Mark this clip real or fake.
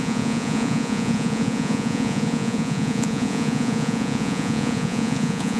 fake